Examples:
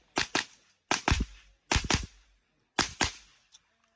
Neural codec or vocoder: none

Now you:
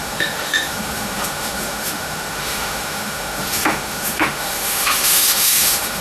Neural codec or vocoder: autoencoder, DAC-VAE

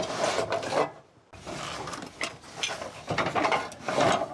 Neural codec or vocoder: none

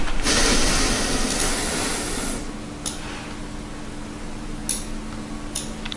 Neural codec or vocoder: none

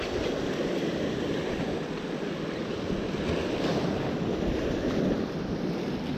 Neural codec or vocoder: none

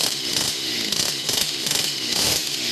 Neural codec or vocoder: autoencoder, DAC-VAE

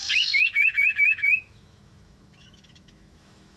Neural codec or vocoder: autoencoder, DAC-VAE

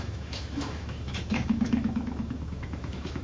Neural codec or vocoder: autoencoder, DAC-VAE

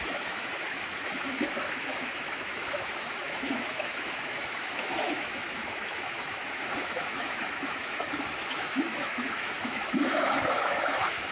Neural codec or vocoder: autoencoder, DAC-VAE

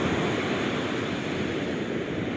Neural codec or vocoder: none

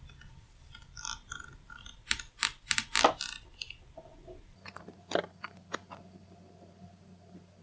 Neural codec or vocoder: none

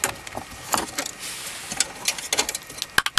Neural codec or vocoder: none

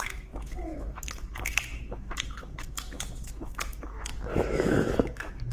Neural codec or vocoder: autoencoder, DAC-VAE